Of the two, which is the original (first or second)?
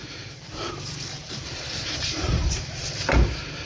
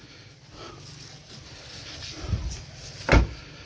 second